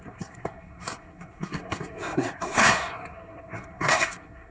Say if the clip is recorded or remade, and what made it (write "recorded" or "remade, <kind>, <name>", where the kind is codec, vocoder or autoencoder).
remade, codec, SNAC